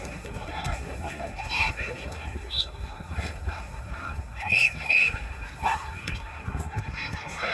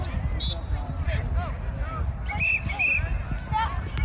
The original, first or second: second